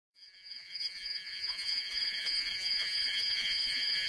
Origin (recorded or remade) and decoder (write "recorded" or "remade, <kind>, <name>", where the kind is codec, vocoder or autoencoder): remade, vocoder, Vocos